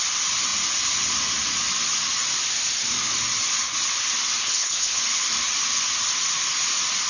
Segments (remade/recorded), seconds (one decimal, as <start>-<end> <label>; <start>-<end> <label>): 0.0-4.4 recorded; 4.4-5.0 remade; 5.0-7.1 recorded